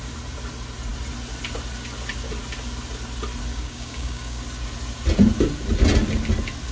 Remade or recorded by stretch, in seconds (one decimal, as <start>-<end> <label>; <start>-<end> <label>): 0.0-3.5 recorded; 3.5-4.4 remade; 4.4-6.7 recorded